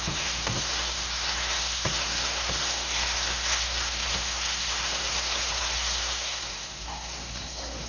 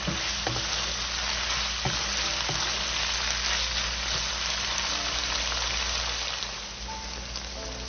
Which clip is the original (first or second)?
second